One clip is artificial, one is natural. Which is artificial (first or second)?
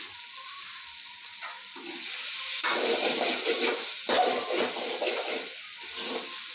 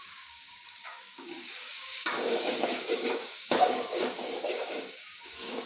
second